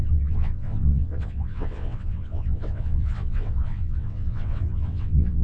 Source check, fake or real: fake